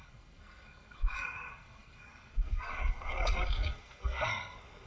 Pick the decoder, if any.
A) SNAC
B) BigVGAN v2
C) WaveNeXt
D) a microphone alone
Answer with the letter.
A